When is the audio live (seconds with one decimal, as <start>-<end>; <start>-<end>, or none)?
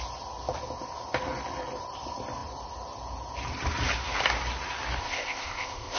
0.0-5.0